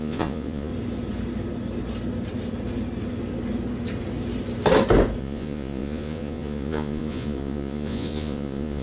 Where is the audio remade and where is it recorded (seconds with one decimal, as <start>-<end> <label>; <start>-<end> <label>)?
0.0-0.7 remade; 0.7-5.2 recorded; 5.2-8.8 remade